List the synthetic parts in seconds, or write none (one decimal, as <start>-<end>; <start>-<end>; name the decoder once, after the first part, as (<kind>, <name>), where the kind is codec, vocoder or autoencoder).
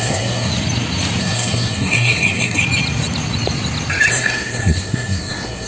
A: 0.0-0.5 (codec, SNAC); 1.2-2.6; 4.1-5.7